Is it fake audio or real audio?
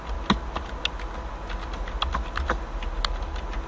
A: real